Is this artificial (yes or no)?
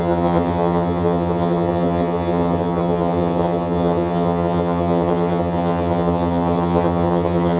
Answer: yes